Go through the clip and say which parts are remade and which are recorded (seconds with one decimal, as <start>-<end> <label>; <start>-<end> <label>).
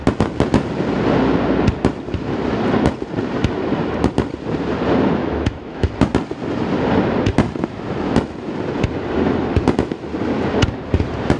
0.0-5.2 recorded; 5.2-5.9 remade; 5.9-11.4 recorded